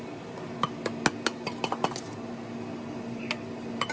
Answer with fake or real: real